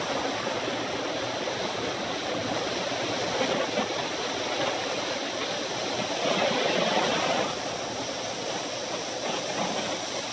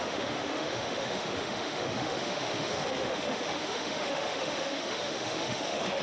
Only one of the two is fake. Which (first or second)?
second